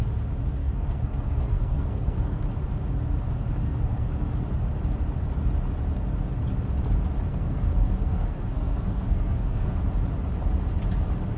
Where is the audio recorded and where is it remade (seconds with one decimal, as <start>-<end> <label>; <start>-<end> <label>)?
0.0-0.6 recorded; 0.6-2.4 remade; 2.4-3.6 recorded; 3.6-4.4 remade; 4.4-7.3 recorded; 7.3-9.7 remade; 9.7-11.4 recorded